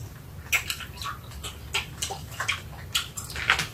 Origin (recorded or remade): recorded